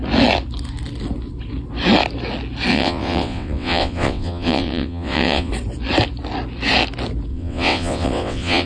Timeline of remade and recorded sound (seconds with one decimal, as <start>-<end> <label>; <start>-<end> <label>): 0.0-2.7 recorded; 2.7-5.5 remade; 5.5-7.3 recorded; 7.3-8.7 remade

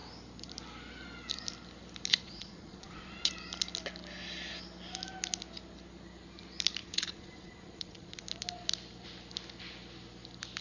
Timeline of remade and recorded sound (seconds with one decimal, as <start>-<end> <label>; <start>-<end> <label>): 0.0-2.1 recorded; 2.1-3.3 remade; 3.3-6.8 recorded; 6.8-8.2 remade; 8.2-10.6 recorded

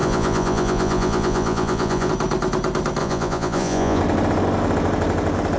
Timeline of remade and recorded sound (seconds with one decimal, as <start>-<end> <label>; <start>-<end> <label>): 0.0-2.1 remade; 2.1-3.0 recorded; 3.0-4.0 remade; 4.0-5.6 recorded